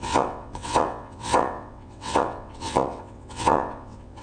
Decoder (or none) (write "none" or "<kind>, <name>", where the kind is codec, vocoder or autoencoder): vocoder, WaveNeXt